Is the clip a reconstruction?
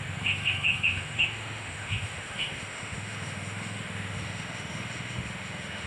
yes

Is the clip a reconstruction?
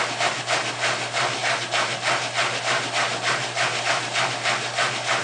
no